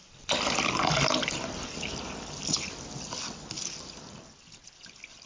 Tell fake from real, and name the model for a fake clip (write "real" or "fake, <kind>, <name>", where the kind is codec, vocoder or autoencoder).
real